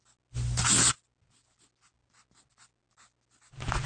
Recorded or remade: recorded